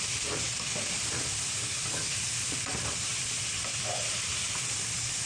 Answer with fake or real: fake